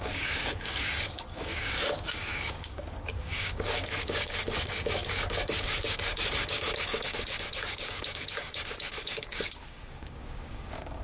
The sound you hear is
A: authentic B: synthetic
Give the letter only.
B